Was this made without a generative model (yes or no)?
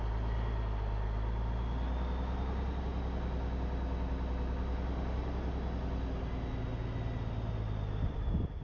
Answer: yes